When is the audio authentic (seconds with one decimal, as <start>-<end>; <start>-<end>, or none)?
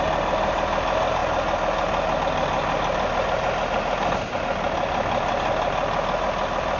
0.0-6.8